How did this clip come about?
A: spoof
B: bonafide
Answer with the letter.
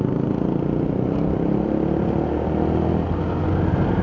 B